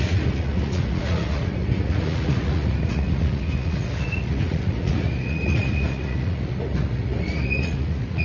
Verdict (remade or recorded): remade